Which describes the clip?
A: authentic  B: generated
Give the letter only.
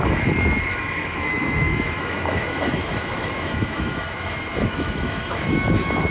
B